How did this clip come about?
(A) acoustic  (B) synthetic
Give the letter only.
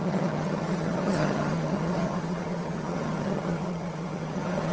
B